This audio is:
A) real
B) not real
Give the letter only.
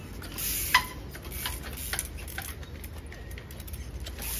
A